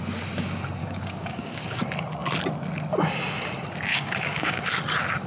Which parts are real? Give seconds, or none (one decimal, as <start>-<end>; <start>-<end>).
0.0-0.8; 1.8-3.9; 4.6-5.3